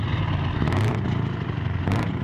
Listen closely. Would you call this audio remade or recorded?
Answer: recorded